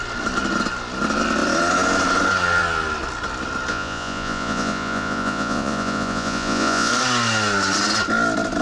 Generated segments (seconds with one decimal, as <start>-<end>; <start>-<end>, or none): 3.7-6.9